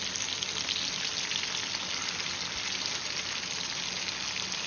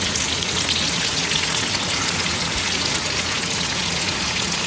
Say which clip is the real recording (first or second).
first